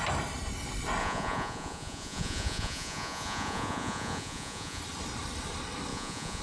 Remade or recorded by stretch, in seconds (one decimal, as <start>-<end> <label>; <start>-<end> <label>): 0.0-1.0 recorded; 1.0-4.8 remade; 4.8-5.9 recorded; 5.9-6.4 remade